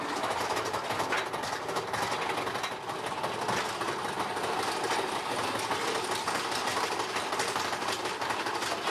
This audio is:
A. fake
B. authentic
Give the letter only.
B